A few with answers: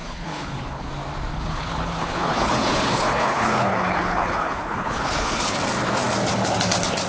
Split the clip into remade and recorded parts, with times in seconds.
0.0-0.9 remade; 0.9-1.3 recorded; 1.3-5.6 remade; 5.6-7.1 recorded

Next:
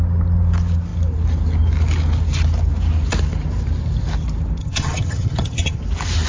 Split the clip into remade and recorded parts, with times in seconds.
0.0-4.6 recorded; 4.6-5.8 remade; 5.8-6.3 recorded

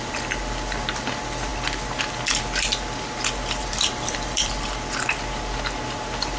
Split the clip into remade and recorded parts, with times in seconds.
0.0-3.6 recorded; 3.6-4.5 remade; 4.5-6.4 recorded

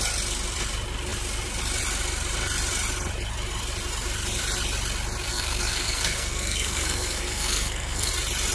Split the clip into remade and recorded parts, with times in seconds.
0.0-5.3 recorded; 5.3-8.1 remade; 8.1-8.5 recorded